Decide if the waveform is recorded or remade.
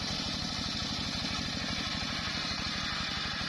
recorded